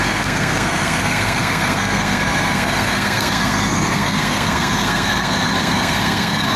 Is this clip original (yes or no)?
no